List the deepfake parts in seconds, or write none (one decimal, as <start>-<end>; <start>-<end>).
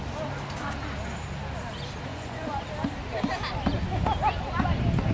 2.1-2.6